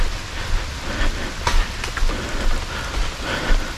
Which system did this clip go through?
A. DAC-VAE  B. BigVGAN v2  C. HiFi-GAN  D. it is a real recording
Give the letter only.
D